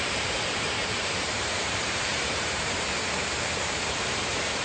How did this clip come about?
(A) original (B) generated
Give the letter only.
B